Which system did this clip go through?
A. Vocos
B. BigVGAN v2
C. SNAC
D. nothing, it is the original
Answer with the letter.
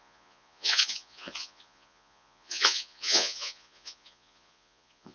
A